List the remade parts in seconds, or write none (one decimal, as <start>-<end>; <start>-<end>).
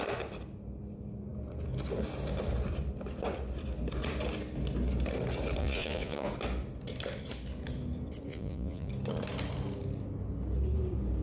5.6-6.3; 8.3-8.9